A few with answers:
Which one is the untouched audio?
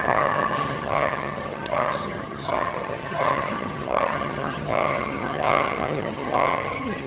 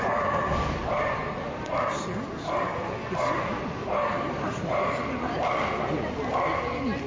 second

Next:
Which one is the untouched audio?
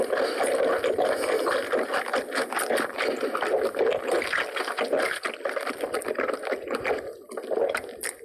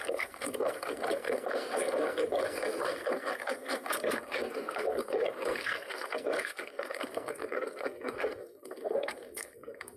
first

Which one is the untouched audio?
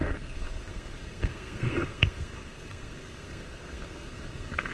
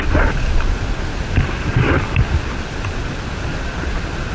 second